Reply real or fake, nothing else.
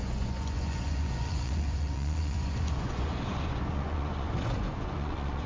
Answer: fake